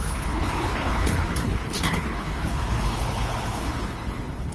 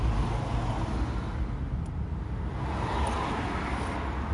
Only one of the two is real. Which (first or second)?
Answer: second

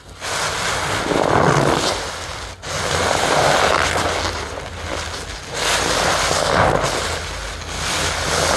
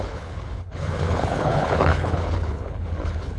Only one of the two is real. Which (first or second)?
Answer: first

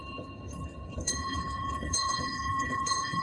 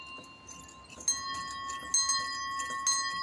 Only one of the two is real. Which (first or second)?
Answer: second